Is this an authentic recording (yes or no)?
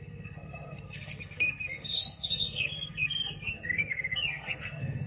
no